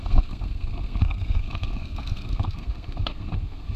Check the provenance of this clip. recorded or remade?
remade